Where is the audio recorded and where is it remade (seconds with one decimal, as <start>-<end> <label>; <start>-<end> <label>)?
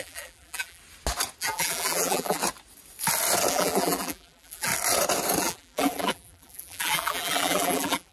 0.0-0.8 remade; 0.8-1.4 recorded; 1.4-2.4 remade; 2.4-3.5 recorded; 3.5-4.7 remade; 4.7-5.4 recorded; 5.4-8.1 remade